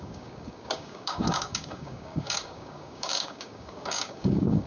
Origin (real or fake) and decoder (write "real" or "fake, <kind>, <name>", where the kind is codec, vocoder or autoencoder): fake, codec, DAC